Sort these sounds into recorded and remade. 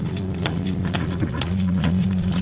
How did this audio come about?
remade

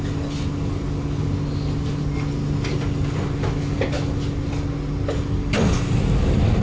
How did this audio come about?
recorded